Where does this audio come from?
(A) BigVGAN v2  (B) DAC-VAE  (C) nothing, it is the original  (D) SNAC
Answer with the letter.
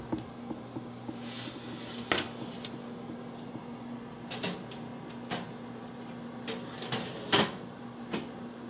C